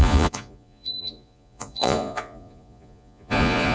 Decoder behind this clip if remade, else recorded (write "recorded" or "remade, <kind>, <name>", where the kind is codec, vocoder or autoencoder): remade, vocoder, Vocos